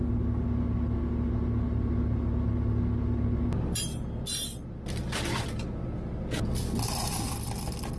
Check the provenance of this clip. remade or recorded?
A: recorded